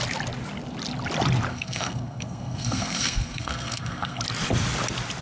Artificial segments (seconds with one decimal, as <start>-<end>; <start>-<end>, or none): 1.5-4.2